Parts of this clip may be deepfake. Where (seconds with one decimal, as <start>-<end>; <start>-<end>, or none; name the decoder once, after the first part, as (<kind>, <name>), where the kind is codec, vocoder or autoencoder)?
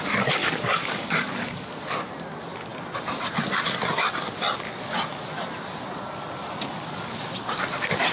0.4-2.1 (codec, DAC)